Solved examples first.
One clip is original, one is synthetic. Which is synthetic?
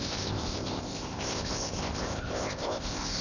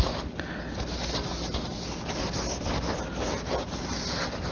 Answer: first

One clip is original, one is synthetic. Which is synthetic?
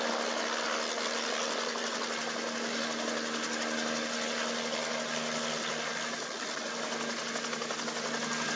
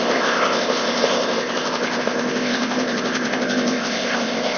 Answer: second